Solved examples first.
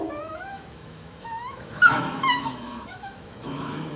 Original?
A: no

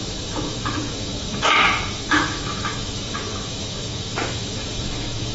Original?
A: no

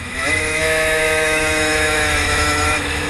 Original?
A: no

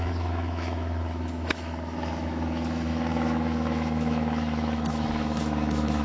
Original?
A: no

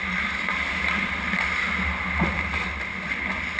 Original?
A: yes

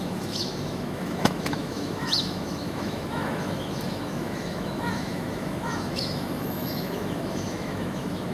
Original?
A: no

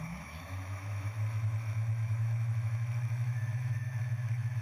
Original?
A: no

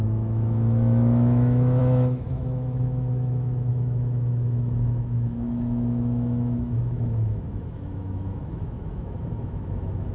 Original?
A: no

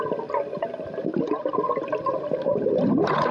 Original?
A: yes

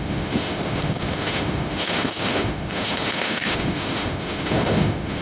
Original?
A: no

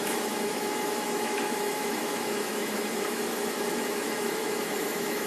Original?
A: no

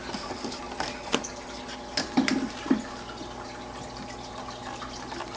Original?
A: yes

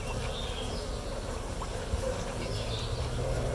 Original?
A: yes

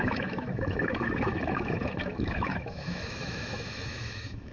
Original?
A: no